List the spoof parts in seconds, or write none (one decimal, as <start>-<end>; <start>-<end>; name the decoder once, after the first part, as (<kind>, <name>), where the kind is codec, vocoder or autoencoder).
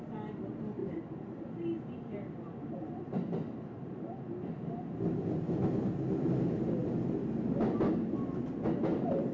none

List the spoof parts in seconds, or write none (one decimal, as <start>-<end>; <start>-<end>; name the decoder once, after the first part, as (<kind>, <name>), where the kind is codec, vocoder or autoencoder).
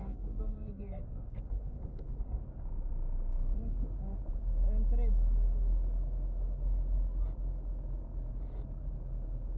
0.0-2.4 (codec, SNAC)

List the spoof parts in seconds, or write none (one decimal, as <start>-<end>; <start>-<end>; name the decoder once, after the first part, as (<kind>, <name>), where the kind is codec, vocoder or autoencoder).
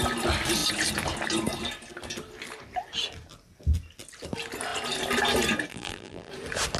5.7-6.3 (vocoder, BigVGAN v2)